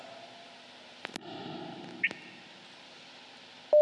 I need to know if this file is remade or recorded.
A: recorded